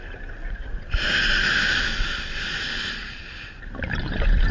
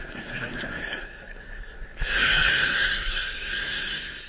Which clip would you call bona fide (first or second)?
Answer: first